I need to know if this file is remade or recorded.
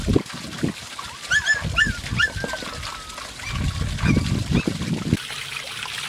recorded